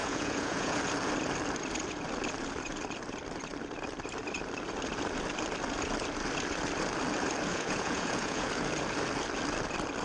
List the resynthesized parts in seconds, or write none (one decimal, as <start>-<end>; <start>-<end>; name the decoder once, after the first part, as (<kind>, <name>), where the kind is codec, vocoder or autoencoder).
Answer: 0.0-0.8 (vocoder, Vocos); 7.5-8.5